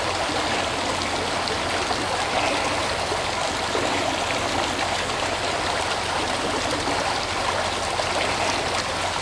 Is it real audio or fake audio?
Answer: real